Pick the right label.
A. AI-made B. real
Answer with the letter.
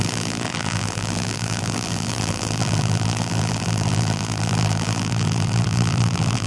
A